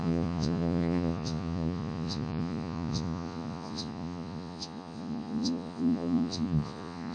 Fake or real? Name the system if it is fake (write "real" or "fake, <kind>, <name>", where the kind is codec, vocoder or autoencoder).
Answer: fake, vocoder, Vocos